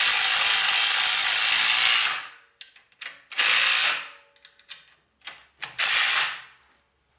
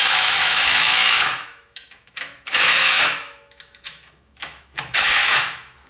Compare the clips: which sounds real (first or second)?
first